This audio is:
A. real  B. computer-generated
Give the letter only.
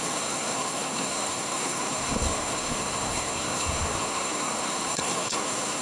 B